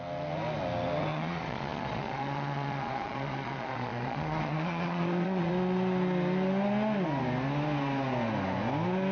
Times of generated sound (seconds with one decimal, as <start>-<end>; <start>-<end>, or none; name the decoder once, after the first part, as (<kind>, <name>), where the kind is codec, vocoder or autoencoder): 1.1-5.5 (vocoder, Vocos)

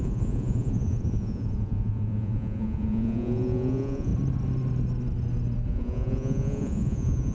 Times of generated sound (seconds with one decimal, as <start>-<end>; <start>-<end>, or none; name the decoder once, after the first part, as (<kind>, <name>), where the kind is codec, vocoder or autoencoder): 0.0-4.1 (vocoder, Vocos); 5.7-7.3